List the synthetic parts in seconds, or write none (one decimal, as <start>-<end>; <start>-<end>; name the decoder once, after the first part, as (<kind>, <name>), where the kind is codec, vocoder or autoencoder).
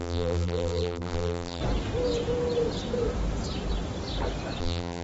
0.0-1.6 (vocoder, BigVGAN v2); 4.6-5.0